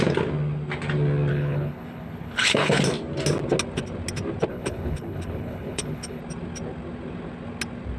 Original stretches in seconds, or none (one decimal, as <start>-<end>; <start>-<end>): 0.0-1.3; 2.8-4.5; 6.2-8.0